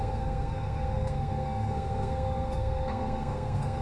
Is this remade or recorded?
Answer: remade